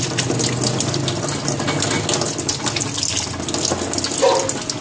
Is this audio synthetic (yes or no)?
no